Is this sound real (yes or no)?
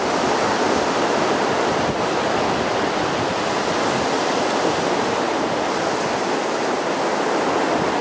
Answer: yes